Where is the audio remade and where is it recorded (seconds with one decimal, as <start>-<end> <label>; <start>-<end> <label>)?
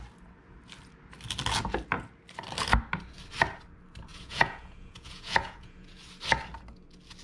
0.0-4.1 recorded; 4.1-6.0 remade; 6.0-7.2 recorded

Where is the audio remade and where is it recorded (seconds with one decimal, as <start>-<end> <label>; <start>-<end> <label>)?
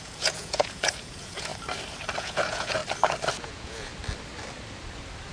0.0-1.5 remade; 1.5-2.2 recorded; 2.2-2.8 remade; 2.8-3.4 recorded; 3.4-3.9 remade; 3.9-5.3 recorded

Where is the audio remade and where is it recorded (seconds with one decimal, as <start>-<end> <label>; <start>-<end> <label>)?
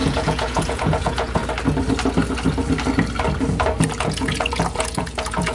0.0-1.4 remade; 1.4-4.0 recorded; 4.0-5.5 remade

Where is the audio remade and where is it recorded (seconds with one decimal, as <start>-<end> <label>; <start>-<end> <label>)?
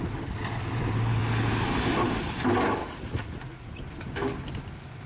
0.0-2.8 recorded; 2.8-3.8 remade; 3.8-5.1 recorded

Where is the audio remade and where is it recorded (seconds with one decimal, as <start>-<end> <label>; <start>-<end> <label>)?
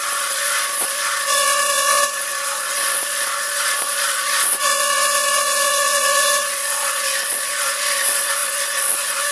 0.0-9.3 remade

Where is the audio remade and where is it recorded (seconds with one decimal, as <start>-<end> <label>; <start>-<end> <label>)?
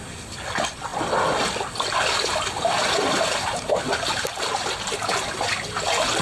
0.0-6.2 recorded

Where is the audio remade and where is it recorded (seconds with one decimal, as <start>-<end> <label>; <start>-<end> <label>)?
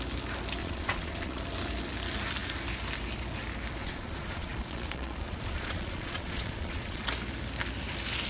0.0-0.6 recorded; 0.6-1.4 remade; 1.4-3.8 recorded; 3.8-7.0 remade; 7.0-8.3 recorded